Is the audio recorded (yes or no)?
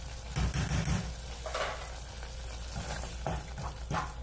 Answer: yes